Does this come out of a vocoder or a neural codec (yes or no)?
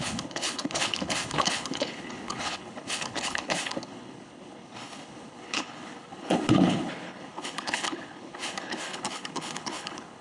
yes